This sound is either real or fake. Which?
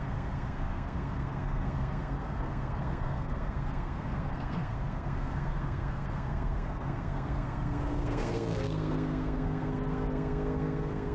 fake